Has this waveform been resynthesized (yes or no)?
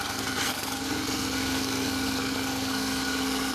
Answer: yes